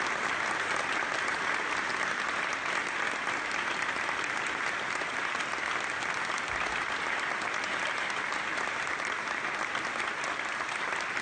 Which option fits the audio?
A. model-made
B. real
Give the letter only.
B